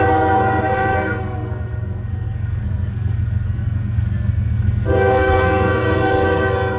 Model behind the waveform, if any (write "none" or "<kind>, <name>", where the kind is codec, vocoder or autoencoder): codec, SNAC